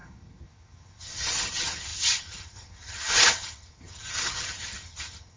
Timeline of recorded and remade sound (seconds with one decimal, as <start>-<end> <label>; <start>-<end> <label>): 0.0-5.4 remade